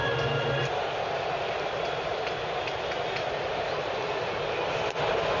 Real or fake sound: real